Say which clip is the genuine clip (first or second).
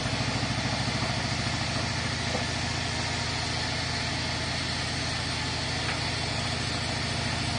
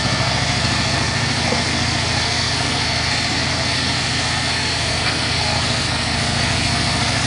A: first